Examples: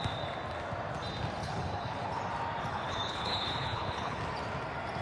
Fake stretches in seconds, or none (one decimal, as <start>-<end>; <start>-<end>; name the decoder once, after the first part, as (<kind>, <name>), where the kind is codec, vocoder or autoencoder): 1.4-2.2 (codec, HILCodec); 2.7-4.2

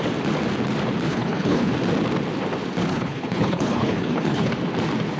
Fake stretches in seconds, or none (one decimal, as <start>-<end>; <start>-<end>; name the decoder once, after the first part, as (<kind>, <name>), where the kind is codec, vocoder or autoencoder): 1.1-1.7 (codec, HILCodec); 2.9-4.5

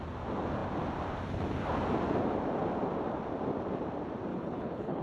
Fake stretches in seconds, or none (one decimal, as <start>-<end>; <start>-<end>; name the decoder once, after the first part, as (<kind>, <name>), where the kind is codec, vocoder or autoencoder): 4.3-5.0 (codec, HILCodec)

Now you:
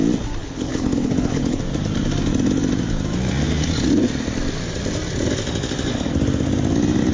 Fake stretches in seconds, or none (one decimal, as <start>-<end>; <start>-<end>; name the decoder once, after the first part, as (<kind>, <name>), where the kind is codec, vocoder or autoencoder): 0.4-1.6 (codec, HILCodec)

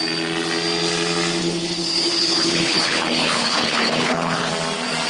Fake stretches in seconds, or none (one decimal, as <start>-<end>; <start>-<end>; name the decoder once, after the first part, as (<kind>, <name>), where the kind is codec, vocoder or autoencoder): 1.4-4.5 (codec, HILCodec)

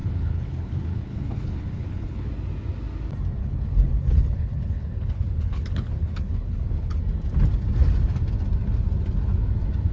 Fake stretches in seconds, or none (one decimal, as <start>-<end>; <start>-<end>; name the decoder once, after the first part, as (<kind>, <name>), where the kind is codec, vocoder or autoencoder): 0.0-2.3 (codec, HILCodec); 3.4-7.0